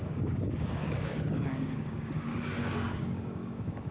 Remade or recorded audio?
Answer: remade